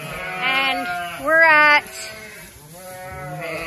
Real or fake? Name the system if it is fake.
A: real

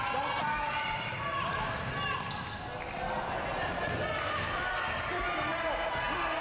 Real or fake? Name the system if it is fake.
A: real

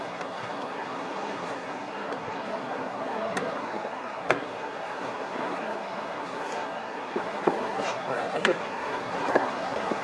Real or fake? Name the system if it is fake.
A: fake, codec, SNAC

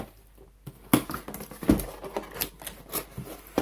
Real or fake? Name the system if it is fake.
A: real